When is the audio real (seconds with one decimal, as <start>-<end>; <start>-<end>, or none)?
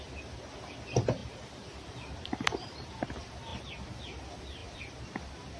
0.0-1.2; 2.9-3.5; 4.0-5.6